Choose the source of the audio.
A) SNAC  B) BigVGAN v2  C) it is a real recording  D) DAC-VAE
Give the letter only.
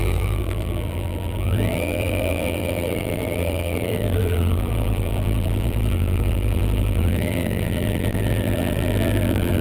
B